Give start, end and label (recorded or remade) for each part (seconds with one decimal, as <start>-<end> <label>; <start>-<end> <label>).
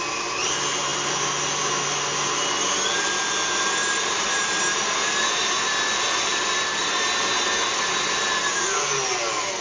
0.0-9.6 recorded